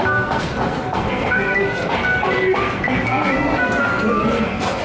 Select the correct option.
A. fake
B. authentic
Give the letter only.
A